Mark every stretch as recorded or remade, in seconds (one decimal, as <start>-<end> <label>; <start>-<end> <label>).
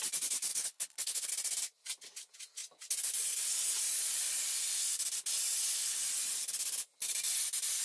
0.0-0.5 recorded; 0.5-1.3 remade; 1.3-7.8 recorded